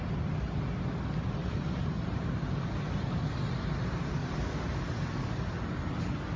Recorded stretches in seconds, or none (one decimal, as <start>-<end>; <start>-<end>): 0.0-1.4; 3.2-4.2; 5.0-6.4